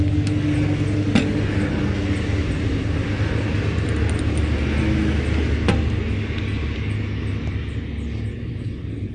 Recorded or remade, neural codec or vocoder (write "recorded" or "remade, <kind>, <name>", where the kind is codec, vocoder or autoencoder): recorded